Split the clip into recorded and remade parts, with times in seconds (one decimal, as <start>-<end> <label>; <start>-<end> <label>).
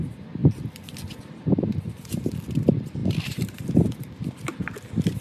0.0-3.0 recorded; 3.0-3.6 remade; 3.6-5.2 recorded